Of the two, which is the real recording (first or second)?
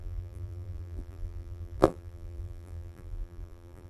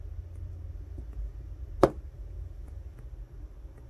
second